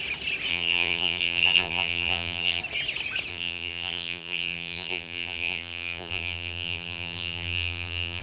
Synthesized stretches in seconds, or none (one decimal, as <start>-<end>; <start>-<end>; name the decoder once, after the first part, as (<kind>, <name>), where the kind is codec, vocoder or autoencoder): 0.5-2.6 (vocoder, BigVGAN v2); 3.3-8.2